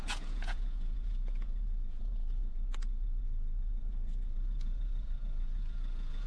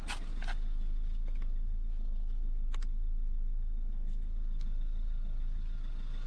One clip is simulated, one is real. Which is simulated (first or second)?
first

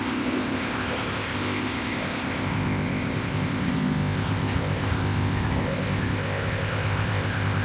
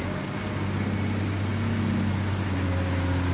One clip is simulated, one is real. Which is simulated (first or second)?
first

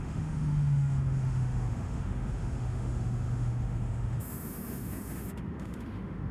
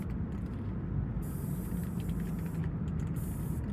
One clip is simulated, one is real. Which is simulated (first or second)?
first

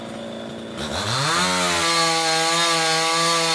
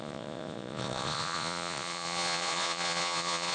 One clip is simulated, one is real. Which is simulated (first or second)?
second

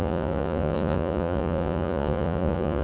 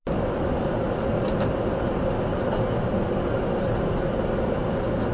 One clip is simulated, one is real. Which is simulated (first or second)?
first